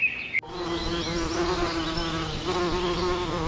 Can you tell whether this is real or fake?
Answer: real